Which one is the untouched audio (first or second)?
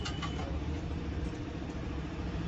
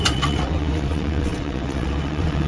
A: first